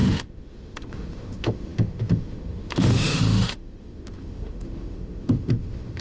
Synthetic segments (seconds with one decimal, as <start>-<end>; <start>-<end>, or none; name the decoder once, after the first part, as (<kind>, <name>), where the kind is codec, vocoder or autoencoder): 0.0-6.0 (autoencoder, DAC-VAE)